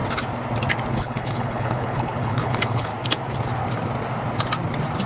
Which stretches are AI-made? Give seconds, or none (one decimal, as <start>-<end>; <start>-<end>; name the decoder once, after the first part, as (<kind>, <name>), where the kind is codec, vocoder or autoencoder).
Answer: 0.9-2.9 (codec, HILCodec)